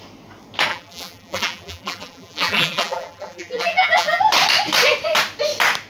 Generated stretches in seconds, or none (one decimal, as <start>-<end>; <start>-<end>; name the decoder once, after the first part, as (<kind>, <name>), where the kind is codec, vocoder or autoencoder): 0.7-4.2 (vocoder, BigVGAN v2)